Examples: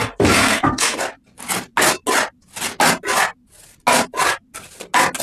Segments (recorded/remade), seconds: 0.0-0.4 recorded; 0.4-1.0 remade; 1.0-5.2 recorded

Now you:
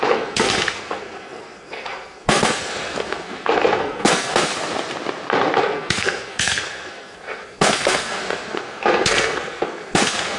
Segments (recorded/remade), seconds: 0.0-4.5 remade; 4.5-5.6 recorded; 5.6-10.4 remade

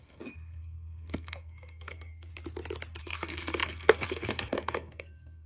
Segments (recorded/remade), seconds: 0.0-2.3 remade; 2.3-3.0 recorded; 3.0-5.5 remade

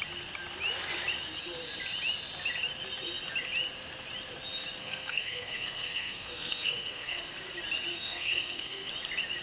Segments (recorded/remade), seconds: 0.0-4.8 recorded; 4.8-7.2 remade; 7.2-7.9 recorded; 7.9-8.9 remade; 8.9-9.4 recorded

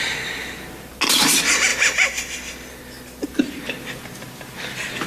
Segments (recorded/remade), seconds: 0.0-5.1 recorded

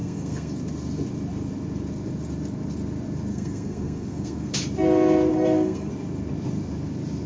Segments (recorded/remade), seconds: 0.0-0.5 remade; 0.5-3.3 recorded; 3.3-4.5 remade; 4.5-5.3 recorded; 5.3-5.9 remade; 5.9-7.3 recorded